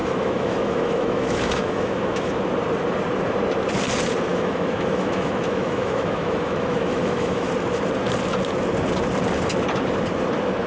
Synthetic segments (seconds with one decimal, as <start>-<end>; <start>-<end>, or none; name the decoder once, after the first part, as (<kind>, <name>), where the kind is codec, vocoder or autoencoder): 0.0-2.3 (autoencoder, DAC-VAE); 4.3-7.5